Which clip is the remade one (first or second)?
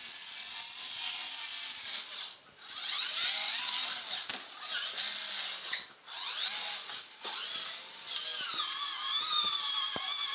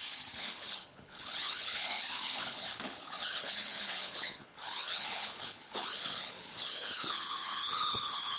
second